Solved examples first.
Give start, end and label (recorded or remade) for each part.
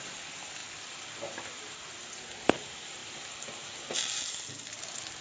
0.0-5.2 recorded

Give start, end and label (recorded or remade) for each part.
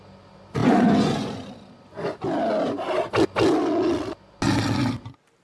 0.0-0.6 recorded; 0.6-1.5 remade; 1.5-5.4 recorded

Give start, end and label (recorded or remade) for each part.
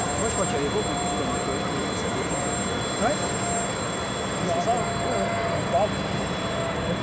0.0-7.0 recorded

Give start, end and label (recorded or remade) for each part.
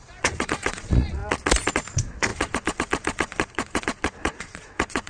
0.0-1.2 remade; 1.2-1.7 recorded; 1.7-5.1 remade